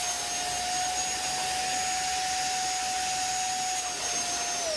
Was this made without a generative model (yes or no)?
yes